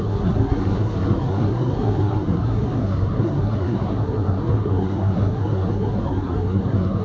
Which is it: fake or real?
fake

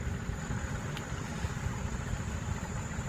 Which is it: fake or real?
real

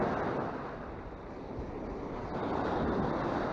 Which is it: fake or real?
real